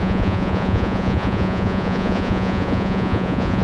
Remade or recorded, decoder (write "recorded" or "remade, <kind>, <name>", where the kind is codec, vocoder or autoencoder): remade, vocoder, Vocos